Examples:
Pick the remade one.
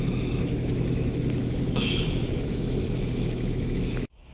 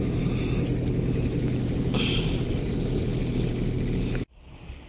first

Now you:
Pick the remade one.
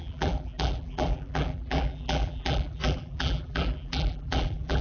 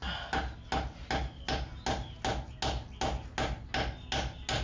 first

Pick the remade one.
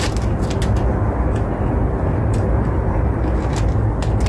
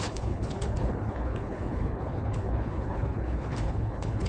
second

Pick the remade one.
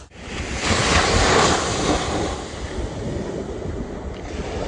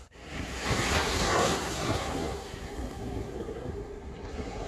second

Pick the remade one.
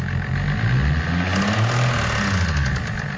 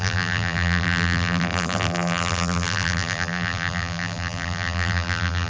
second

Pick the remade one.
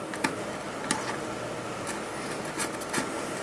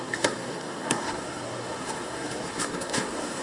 second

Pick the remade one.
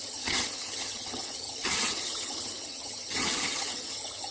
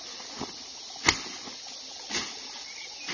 first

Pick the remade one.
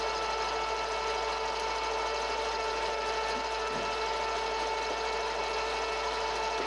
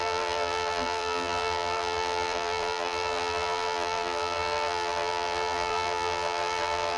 second